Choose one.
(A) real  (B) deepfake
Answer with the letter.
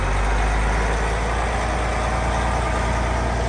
A